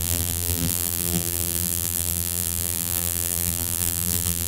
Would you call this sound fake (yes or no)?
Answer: yes